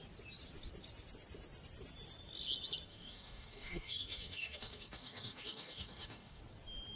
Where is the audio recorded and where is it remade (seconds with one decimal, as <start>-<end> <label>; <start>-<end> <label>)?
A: 0.0-2.9 recorded; 2.9-6.4 remade; 6.4-7.0 recorded